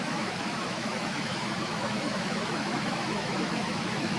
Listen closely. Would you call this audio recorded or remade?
remade